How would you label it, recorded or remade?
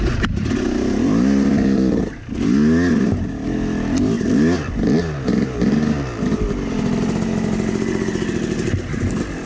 recorded